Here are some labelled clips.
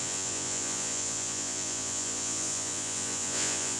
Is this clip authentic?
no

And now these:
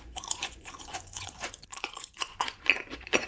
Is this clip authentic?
no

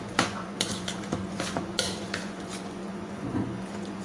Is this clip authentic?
no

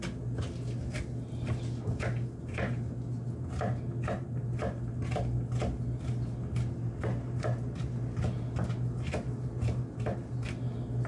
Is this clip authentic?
yes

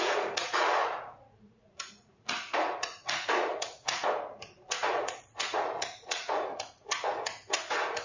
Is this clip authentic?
no